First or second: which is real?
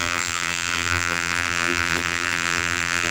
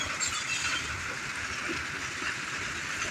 second